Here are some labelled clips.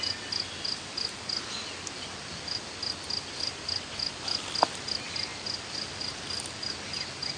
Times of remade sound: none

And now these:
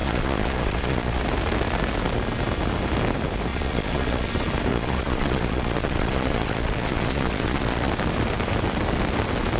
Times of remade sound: 0.0-1.2 (vocoder, Vocos); 3.5-4.3; 4.7-7.9

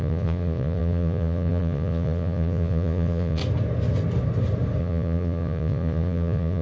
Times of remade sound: 0.0-3.4 (vocoder, Vocos); 4.8-6.6